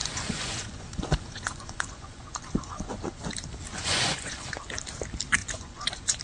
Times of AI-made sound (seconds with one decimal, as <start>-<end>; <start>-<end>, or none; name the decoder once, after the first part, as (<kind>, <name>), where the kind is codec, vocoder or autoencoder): 0.0-3.2 (vocoder, Vocos); 3.7-4.6; 5.4-6.2